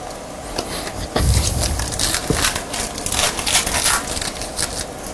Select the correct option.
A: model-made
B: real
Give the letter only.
B